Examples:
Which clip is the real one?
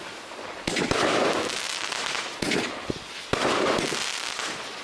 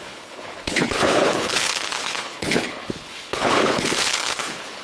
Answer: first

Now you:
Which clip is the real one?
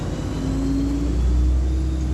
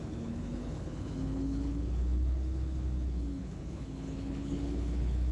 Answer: first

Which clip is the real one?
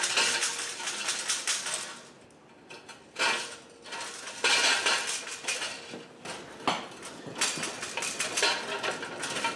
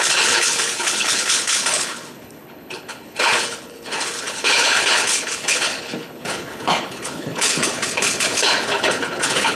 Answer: first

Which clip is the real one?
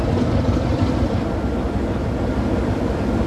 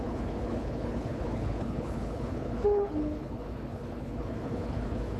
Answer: first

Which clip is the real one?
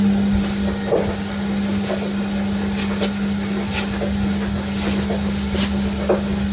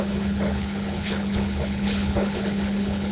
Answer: first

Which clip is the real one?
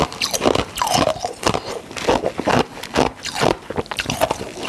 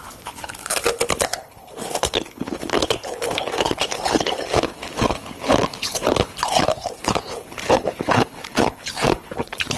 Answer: first